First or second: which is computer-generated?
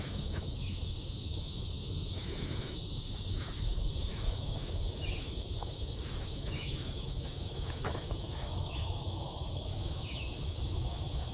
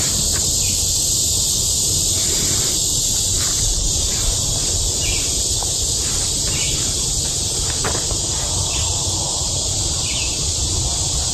first